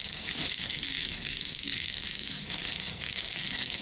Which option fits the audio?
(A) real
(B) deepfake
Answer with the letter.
B